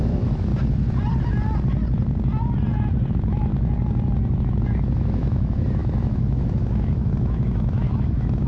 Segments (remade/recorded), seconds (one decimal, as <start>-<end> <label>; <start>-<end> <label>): 0.0-0.5 remade; 0.5-3.1 recorded; 3.1-3.5 remade; 3.5-4.4 recorded; 4.4-8.5 remade